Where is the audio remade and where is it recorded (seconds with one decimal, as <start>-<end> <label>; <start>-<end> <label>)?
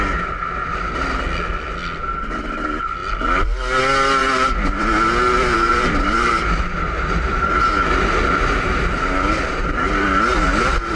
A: 0.0-5.5 recorded; 5.5-7.5 remade; 7.5-11.0 recorded